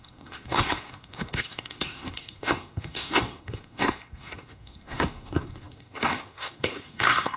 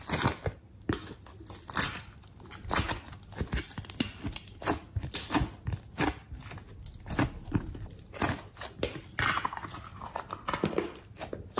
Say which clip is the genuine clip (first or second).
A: second